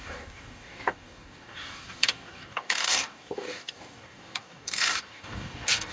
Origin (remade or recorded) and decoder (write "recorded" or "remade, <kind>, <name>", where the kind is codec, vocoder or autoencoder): remade, codec, DAC